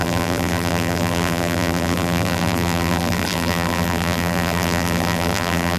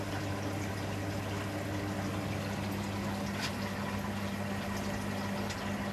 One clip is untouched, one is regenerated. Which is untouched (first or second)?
second